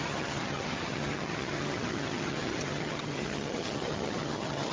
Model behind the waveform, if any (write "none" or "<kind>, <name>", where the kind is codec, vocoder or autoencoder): vocoder, HiFi-GAN